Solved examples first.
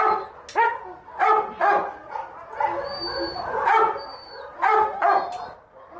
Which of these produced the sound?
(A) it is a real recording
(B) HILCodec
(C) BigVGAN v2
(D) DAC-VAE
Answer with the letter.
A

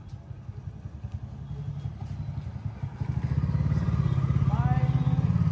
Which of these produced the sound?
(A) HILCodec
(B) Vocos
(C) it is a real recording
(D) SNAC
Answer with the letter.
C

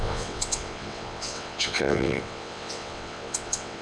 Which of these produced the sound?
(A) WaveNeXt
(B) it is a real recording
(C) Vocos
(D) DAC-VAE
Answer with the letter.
A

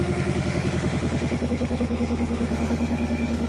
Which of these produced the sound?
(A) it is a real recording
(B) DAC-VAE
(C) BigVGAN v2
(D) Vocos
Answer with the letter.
B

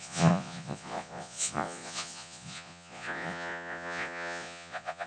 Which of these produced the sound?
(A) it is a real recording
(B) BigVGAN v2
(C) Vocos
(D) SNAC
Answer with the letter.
C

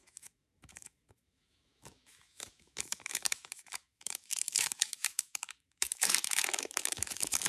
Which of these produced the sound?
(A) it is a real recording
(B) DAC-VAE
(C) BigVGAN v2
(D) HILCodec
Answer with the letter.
B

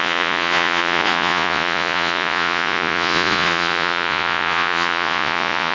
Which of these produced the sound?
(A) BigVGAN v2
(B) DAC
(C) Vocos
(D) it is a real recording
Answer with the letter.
C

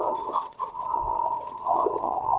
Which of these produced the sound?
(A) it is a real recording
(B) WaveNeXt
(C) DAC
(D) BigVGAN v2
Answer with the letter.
B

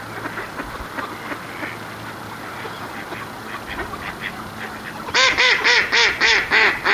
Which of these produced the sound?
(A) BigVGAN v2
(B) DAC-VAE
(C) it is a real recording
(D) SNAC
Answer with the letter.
C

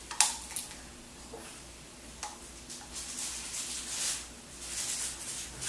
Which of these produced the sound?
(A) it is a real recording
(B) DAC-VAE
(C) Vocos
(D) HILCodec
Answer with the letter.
A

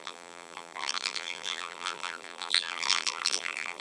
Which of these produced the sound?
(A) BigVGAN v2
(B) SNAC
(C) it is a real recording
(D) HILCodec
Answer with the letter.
A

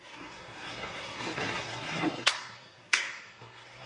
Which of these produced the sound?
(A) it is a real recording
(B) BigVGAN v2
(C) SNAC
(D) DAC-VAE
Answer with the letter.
C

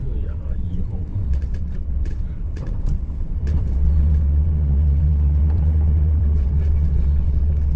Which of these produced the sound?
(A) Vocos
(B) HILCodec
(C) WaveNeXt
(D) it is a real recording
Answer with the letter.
C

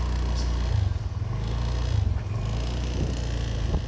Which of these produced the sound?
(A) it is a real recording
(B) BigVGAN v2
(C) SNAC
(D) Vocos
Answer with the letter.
A